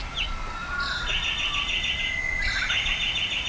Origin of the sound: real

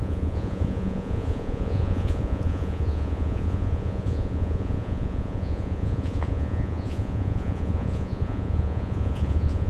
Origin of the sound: fake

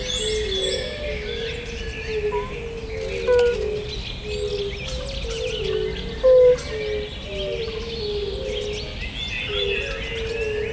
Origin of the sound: real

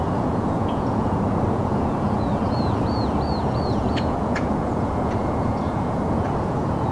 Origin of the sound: fake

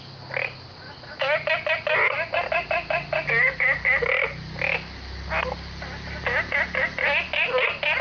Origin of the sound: real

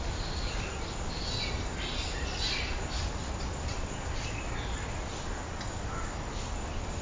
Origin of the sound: real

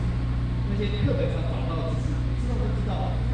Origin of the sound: real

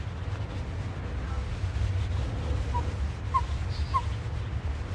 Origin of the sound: real